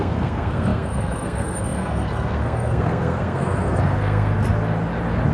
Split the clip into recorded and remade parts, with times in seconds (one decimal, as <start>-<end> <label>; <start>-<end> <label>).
0.0-4.3 remade; 4.3-5.3 recorded